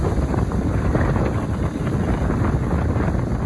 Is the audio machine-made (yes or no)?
no